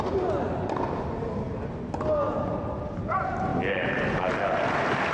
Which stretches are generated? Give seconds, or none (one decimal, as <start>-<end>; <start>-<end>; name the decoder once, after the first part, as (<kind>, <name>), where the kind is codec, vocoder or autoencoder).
none